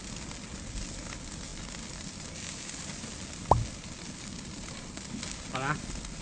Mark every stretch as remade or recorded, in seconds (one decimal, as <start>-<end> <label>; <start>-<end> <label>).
0.0-6.2 recorded